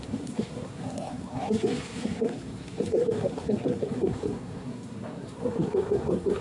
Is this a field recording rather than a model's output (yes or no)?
no